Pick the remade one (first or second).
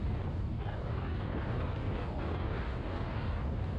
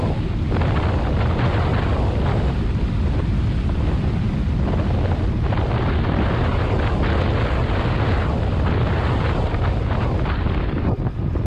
first